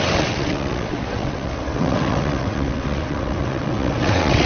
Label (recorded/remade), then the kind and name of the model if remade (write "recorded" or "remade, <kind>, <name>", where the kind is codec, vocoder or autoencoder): remade, vocoder, WaveNeXt